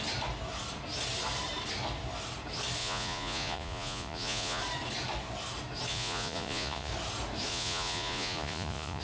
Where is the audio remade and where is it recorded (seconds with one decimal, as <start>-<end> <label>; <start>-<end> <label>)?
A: 0.0-2.8 recorded; 2.8-4.6 remade; 4.6-5.9 recorded; 5.9-6.9 remade; 6.9-7.5 recorded; 7.5-9.0 remade